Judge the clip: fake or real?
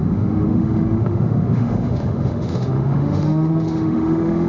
fake